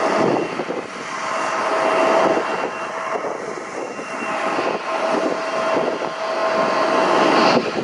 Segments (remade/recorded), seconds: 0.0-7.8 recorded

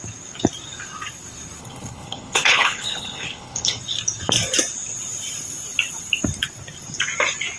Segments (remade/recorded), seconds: 0.0-1.6 recorded; 1.6-3.8 remade; 3.8-7.6 recorded

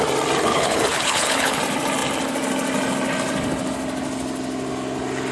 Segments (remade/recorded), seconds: 0.0-0.5 recorded; 0.5-1.6 remade; 1.6-5.3 recorded

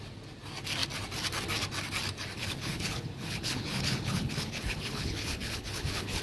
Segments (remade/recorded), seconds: 0.0-2.4 recorded; 2.4-6.2 remade